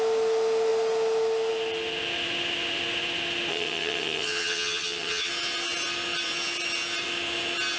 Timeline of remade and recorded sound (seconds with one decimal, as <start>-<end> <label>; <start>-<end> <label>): 0.0-3.5 recorded; 3.5-5.3 remade; 5.3-7.8 recorded